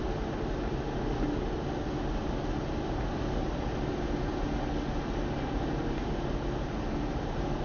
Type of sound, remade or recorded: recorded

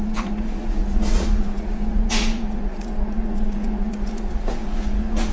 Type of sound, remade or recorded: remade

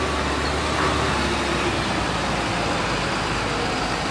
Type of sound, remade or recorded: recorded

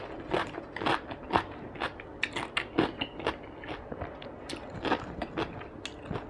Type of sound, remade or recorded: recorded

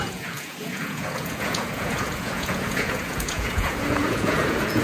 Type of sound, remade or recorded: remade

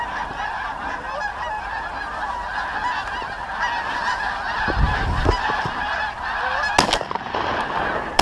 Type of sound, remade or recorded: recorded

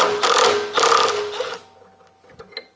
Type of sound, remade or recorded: recorded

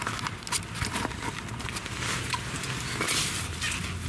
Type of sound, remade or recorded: recorded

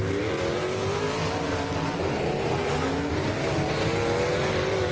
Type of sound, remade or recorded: recorded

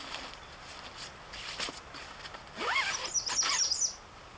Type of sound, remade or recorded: recorded